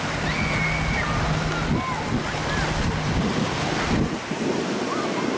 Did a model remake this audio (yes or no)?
no